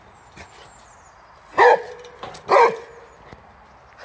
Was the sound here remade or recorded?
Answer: recorded